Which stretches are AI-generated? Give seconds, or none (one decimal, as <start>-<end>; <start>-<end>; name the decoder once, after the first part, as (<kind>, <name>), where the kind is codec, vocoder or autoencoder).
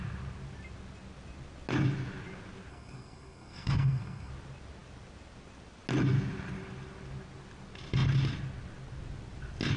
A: 2.7-4.3 (codec, SNAC)